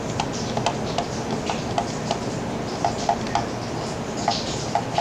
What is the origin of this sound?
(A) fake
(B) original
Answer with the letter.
B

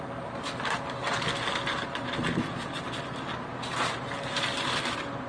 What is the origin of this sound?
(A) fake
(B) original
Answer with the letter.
B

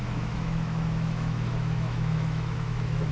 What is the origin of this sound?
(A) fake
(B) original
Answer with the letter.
A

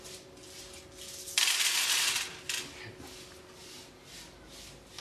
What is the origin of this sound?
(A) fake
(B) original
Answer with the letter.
B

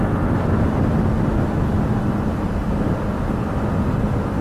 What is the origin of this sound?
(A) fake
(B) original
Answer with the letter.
B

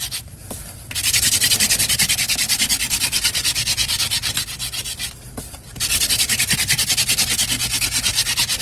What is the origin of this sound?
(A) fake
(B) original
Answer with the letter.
B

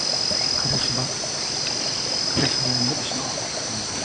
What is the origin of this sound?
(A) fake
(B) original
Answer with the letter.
B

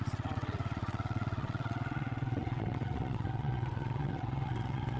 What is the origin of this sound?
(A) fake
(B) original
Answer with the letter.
A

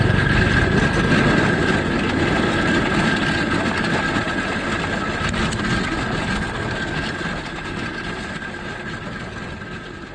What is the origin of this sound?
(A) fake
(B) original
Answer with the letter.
B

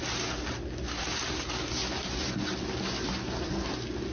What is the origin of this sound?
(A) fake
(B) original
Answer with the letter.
B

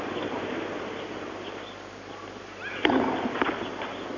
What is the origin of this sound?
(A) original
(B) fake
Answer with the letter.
A